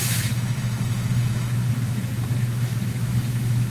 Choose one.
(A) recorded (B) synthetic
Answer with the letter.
B